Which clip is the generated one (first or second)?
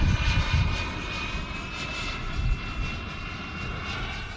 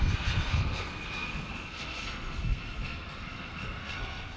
second